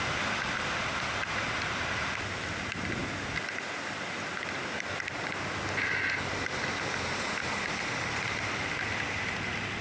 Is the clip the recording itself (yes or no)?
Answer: yes